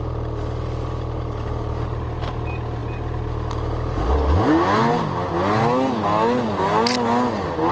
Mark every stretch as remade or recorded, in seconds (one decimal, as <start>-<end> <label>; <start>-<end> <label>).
0.0-7.7 recorded